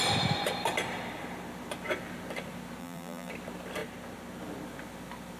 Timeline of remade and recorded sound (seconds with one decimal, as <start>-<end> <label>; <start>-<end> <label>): 0.0-2.8 recorded; 2.8-3.3 remade; 3.3-5.4 recorded